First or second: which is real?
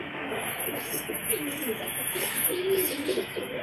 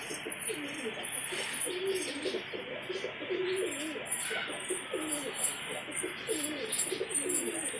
second